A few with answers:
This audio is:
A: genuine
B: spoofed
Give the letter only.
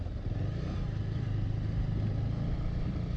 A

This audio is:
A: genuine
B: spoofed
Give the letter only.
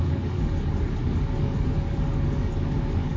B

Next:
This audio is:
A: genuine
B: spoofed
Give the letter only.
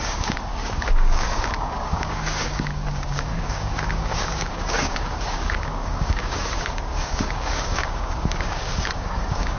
B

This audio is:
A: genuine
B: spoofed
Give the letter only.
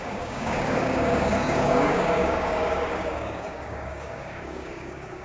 B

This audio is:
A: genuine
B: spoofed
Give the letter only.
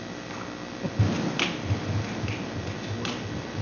A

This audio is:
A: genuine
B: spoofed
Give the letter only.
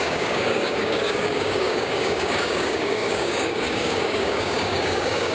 B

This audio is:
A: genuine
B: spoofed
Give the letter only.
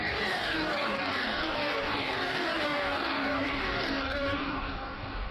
B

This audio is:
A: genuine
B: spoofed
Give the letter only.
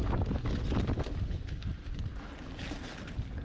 A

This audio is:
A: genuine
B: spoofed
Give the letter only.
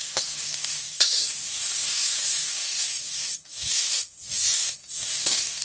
B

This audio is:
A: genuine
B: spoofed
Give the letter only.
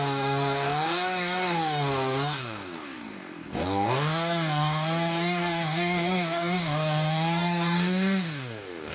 B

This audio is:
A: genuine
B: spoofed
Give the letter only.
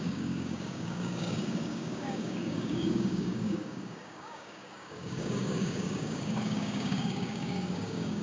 B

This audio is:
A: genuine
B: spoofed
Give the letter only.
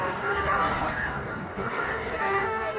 B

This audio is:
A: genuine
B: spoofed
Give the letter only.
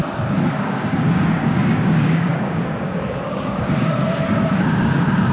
B